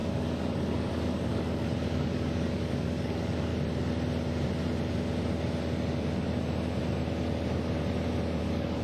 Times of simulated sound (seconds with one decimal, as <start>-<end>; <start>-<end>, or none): 0.0-3.5; 8.4-8.8